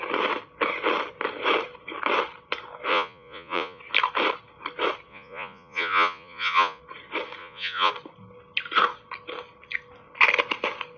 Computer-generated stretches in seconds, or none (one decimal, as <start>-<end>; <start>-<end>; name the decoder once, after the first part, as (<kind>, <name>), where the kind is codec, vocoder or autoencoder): 2.9-3.8 (vocoder, Vocos); 5.1-6.8; 7.4-7.9